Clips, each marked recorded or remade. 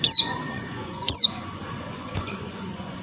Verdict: remade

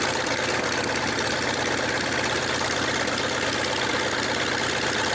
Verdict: recorded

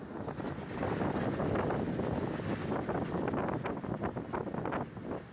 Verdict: recorded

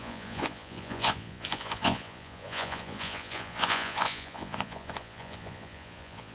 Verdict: remade